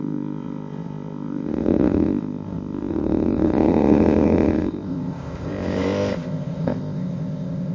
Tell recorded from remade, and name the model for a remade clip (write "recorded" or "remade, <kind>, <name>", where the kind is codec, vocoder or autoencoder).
remade, codec, ZipCodec